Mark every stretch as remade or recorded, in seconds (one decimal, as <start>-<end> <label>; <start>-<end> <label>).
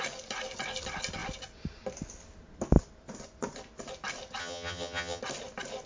0.0-4.4 recorded; 4.4-5.2 remade; 5.2-5.9 recorded